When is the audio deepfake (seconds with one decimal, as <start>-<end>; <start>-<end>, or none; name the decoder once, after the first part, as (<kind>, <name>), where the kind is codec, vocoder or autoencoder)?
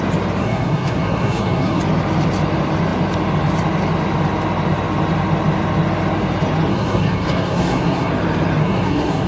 0.4-1.8 (codec, SNAC); 6.7-8.1; 8.6-9.3